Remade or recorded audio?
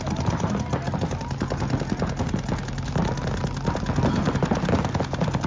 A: recorded